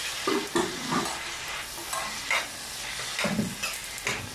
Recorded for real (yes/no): yes